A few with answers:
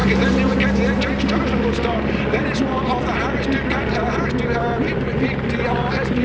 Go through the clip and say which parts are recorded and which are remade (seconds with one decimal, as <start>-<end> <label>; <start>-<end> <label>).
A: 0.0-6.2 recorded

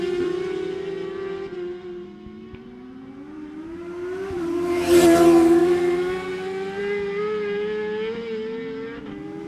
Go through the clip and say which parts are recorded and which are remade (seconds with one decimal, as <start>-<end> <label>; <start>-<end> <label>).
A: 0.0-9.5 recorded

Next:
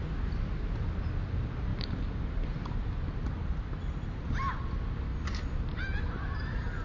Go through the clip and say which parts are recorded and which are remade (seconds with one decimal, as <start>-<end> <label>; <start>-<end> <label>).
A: 0.0-1.7 recorded; 1.7-4.7 remade; 4.7-6.8 recorded

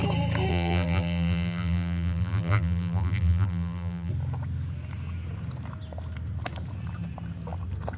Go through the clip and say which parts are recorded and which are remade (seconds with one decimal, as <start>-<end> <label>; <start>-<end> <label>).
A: 0.0-0.5 recorded; 0.5-4.1 remade; 4.1-8.0 recorded

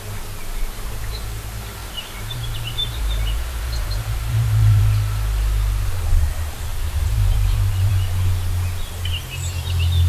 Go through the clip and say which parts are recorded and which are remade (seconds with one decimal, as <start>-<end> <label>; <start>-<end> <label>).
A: 0.0-1.8 recorded; 1.8-4.8 remade; 4.8-6.7 recorded; 6.7-7.9 remade; 7.9-10.1 recorded

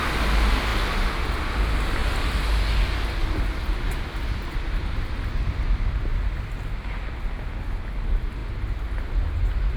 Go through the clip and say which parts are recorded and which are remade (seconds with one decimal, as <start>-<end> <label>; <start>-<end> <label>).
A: 0.0-9.8 recorded